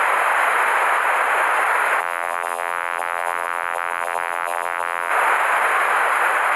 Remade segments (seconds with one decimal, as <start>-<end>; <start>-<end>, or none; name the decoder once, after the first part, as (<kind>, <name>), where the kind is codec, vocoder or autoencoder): 2.0-5.1 (vocoder, BigVGAN v2)